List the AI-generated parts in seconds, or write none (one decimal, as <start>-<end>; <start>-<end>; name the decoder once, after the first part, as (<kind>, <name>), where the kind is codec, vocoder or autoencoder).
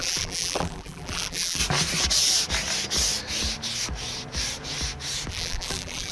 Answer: 0.0-1.6 (vocoder, BigVGAN v2); 5.3-6.1